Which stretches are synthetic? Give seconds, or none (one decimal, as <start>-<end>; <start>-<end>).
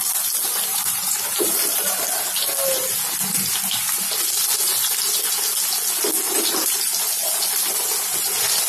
0.7-2.0